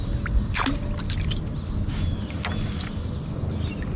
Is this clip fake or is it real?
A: real